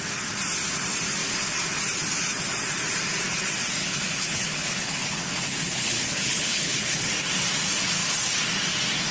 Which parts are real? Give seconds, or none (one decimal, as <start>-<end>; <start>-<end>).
0.0-3.8; 7.0-9.1